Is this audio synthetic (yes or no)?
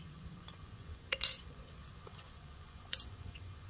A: yes